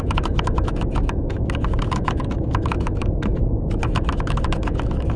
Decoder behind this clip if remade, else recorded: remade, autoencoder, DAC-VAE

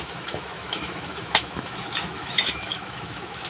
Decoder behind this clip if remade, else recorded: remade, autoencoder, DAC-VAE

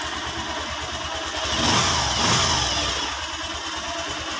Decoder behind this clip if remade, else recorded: recorded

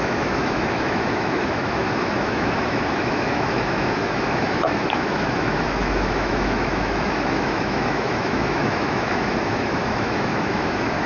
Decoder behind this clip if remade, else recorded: remade, autoencoder, DAC-VAE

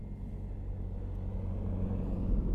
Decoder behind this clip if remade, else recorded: recorded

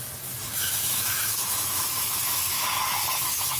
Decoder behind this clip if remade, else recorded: remade, autoencoder, DAC-VAE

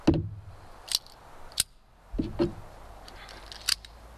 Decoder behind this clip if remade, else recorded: recorded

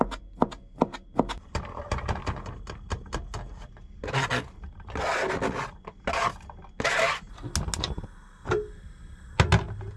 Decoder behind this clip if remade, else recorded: recorded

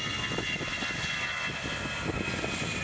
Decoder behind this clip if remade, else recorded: recorded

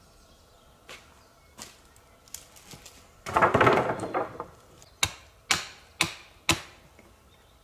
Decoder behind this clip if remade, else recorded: recorded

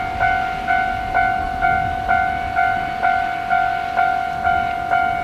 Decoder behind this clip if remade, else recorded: recorded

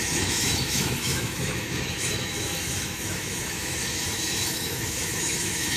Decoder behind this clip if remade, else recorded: remade, autoencoder, DAC-VAE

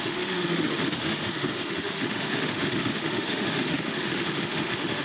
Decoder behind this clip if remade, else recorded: remade, autoencoder, DAC-VAE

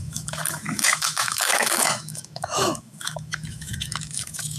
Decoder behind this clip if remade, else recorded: remade, autoencoder, DAC-VAE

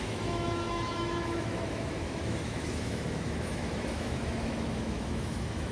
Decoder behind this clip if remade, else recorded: remade, autoencoder, DAC-VAE